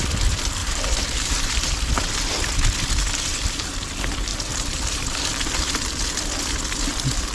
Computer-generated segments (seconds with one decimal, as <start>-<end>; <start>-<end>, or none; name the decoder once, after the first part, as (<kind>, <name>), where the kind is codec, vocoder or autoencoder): 0.6-1.9 (vocoder, BigVGAN v2); 3.3-3.8; 4.3-5.5